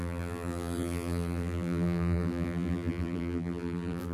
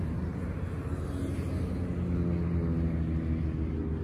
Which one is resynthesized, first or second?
first